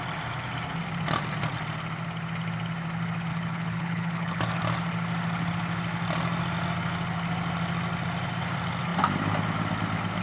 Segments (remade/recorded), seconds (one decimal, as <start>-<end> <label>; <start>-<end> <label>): 0.0-3.3 recorded; 3.3-4.4 remade; 4.4-10.2 recorded